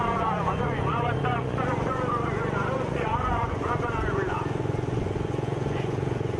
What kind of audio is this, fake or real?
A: fake